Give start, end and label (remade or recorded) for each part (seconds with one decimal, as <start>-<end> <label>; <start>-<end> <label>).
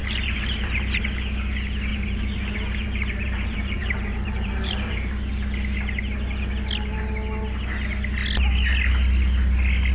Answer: 0.0-1.0 remade; 1.0-1.9 recorded; 1.9-5.1 remade; 5.1-9.9 recorded